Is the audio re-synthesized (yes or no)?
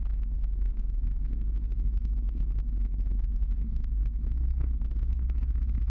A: yes